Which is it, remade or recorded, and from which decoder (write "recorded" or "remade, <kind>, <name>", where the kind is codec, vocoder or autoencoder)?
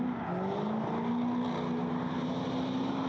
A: recorded